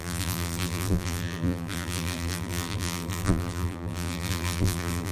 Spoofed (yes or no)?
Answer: yes